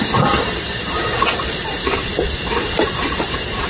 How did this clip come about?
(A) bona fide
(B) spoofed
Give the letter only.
B